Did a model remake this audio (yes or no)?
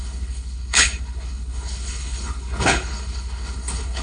yes